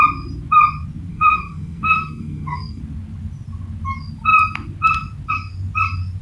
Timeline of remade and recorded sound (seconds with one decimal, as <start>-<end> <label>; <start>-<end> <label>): 0.0-1.1 recorded; 1.1-2.8 remade; 2.8-6.2 recorded